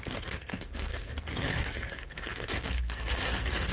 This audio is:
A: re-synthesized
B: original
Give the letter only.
A